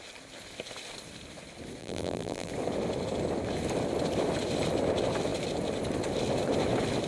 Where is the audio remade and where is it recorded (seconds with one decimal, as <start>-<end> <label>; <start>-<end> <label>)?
0.0-1.8 recorded; 1.8-2.5 remade; 2.5-7.1 recorded